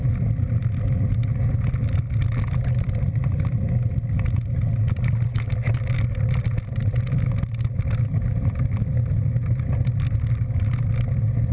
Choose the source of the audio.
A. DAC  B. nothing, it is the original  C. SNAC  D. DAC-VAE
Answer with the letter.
B